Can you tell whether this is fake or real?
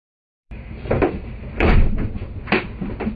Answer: fake